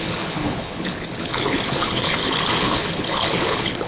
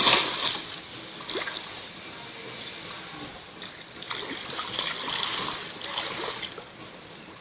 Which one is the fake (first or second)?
first